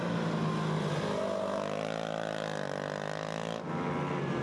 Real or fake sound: real